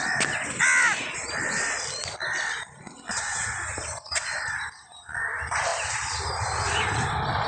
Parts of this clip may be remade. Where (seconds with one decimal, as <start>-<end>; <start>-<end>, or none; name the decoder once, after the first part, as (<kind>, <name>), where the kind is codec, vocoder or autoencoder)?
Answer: 0.0-0.7 (vocoder, BigVGAN v2); 5.2-7.5